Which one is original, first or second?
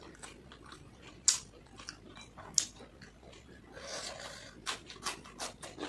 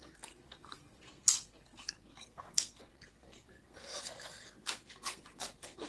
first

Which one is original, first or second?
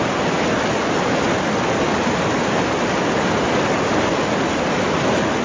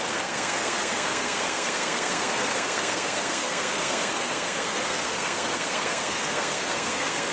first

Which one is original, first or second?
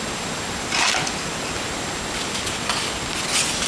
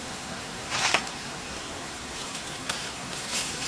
first